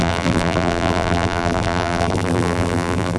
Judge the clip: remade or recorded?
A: remade